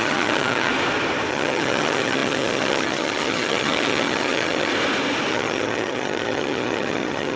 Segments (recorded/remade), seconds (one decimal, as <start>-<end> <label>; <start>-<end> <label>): 0.0-0.7 remade; 0.7-1.3 recorded; 1.3-4.7 remade; 4.7-5.3 recorded; 5.3-7.4 remade